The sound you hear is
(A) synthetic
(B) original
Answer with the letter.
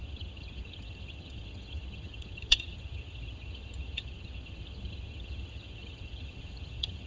A